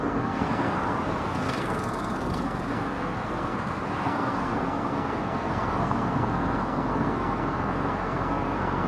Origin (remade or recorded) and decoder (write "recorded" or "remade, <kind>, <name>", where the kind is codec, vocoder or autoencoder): remade, codec, SNAC